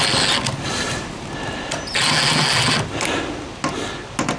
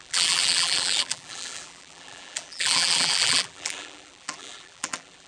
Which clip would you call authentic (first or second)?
first